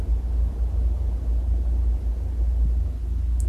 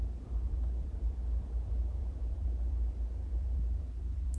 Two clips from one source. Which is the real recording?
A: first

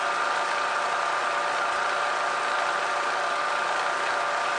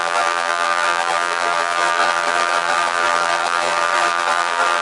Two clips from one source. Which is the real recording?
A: first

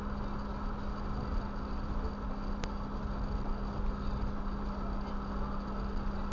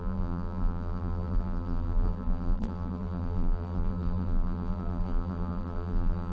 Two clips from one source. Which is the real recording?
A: first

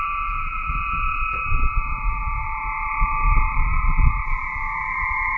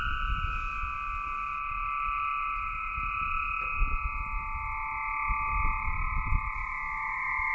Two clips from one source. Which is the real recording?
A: second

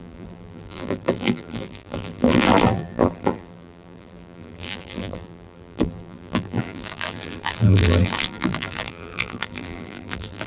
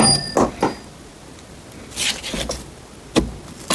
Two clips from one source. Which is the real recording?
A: second